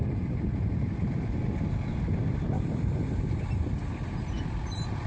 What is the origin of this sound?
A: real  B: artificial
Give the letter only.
A